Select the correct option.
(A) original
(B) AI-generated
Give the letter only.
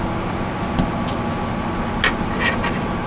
A